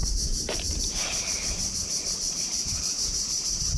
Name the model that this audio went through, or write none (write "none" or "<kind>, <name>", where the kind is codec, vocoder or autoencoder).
vocoder, BigVGAN v2